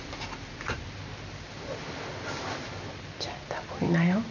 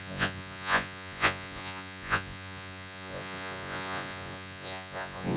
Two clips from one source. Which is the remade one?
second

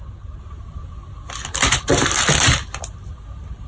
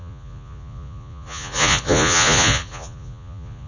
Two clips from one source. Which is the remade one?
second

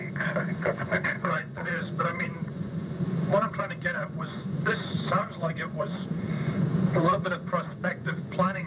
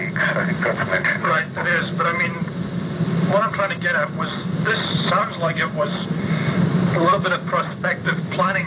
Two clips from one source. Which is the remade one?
first